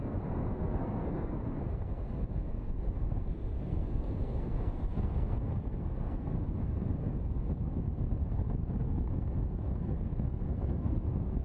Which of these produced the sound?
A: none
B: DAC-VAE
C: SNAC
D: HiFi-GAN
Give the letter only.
C